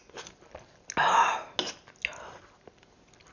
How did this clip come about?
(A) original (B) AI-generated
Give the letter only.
A